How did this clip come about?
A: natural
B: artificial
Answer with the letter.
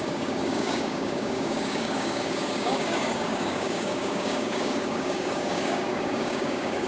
B